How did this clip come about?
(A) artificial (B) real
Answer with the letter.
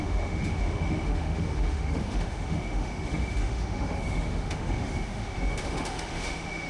A